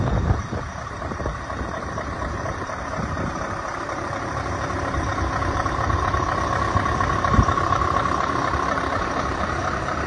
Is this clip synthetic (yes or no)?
yes